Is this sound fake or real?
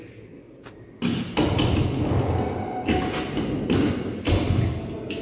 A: real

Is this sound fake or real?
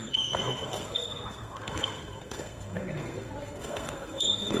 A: fake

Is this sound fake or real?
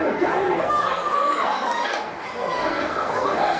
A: fake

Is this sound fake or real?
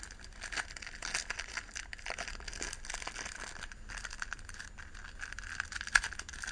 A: real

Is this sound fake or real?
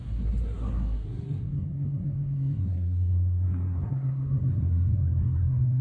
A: fake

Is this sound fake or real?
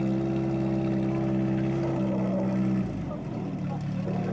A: real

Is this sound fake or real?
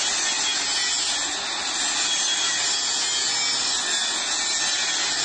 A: real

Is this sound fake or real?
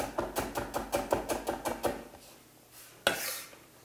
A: real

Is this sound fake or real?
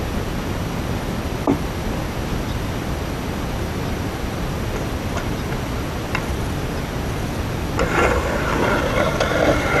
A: real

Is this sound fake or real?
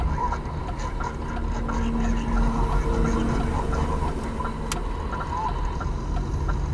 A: real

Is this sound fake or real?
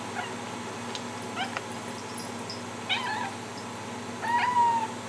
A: real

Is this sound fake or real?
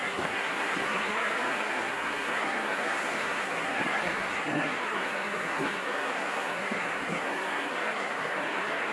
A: fake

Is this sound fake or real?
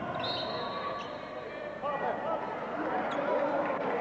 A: real